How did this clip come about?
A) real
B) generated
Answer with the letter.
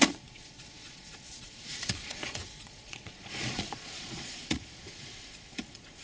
B